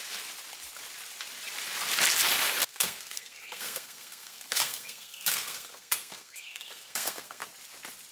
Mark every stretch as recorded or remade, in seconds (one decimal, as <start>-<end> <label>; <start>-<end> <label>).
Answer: 0.0-2.6 recorded; 2.6-7.5 remade; 7.5-8.1 recorded